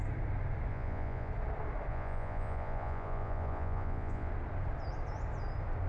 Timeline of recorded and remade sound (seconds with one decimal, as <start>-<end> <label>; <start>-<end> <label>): 0.0-0.7 recorded; 0.7-1.3 remade; 1.3-1.9 recorded; 1.9-4.3 remade; 4.3-5.9 recorded